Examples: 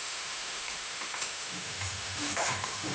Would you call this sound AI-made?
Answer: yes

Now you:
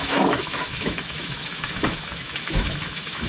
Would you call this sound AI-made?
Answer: yes